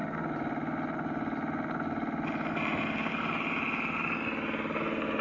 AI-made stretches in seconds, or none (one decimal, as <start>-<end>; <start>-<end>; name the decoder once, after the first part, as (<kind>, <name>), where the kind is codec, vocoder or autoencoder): none